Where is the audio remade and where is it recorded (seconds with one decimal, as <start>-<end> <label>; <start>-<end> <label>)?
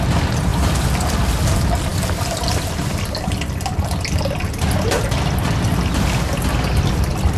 0.0-7.4 recorded